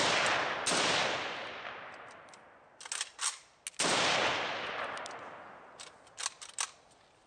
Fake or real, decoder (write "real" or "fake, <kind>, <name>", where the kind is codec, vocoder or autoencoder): real